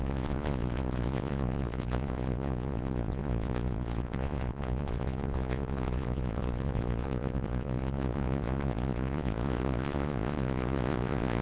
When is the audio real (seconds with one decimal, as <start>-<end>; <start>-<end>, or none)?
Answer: none